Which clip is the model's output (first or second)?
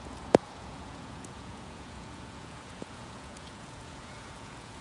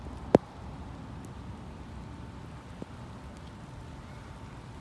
first